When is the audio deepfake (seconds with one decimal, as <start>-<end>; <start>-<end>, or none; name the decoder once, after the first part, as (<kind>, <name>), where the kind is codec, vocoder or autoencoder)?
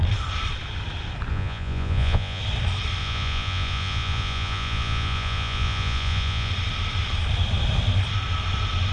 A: 1.3-2.4 (vocoder, Vocos); 3.0-6.5